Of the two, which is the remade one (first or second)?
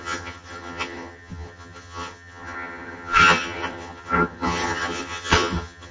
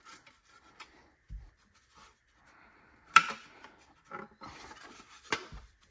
first